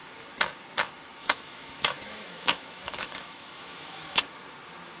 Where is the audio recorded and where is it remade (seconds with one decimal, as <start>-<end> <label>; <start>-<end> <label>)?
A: 0.0-1.2 recorded; 1.2-4.2 remade; 4.2-5.0 recorded